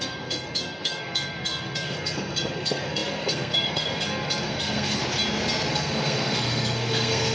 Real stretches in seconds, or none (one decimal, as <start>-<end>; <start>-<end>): 5.0-5.7